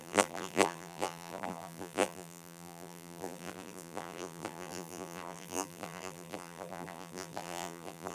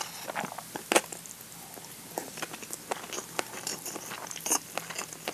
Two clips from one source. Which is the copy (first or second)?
first